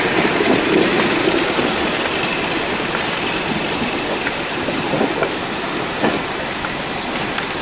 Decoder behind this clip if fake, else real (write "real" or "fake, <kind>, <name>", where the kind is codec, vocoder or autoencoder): real